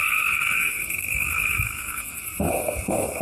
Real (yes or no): no